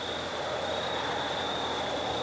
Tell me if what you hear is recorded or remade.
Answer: recorded